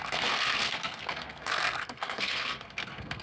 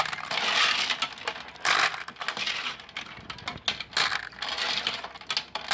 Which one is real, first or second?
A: second